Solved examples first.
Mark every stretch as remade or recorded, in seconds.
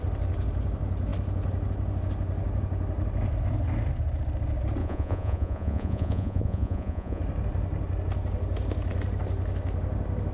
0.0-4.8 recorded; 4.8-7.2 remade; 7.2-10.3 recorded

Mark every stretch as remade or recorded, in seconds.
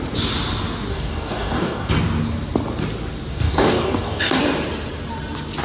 0.0-0.9 recorded; 0.9-1.9 remade; 1.9-3.3 recorded; 3.3-4.4 remade; 4.4-5.6 recorded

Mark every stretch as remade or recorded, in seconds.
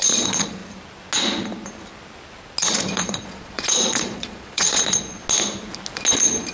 0.0-0.6 remade; 0.6-2.7 recorded; 2.7-5.2 remade; 5.2-6.1 recorded; 6.1-6.5 remade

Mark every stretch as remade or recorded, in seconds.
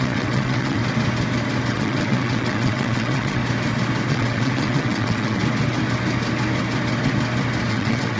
0.0-0.8 remade; 0.8-1.7 recorded; 1.7-3.4 remade; 3.4-4.1 recorded; 4.1-5.4 remade; 5.4-7.7 recorded; 7.7-8.2 remade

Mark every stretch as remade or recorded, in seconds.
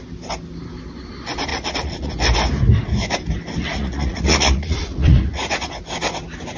0.0-1.5 recorded; 1.5-2.1 remade; 2.1-3.6 recorded; 3.6-5.7 remade; 5.7-6.6 recorded